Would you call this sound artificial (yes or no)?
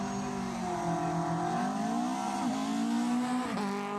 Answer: no